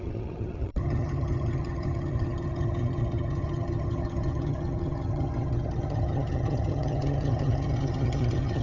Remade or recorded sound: remade